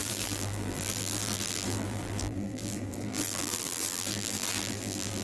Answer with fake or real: fake